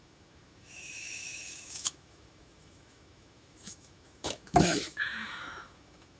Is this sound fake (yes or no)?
yes